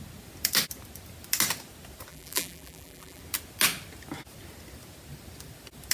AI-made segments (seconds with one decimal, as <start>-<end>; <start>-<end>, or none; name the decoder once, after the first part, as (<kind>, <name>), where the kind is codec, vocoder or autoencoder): 2.1-3.2 (vocoder, BigVGAN v2)